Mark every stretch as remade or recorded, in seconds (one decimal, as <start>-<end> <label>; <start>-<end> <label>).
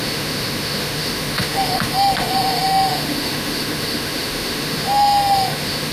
0.0-5.9 remade